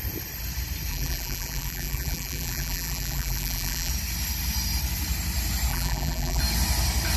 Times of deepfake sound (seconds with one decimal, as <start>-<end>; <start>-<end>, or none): 0.9-3.9; 5.7-6.4